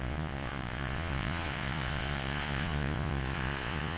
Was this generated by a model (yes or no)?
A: yes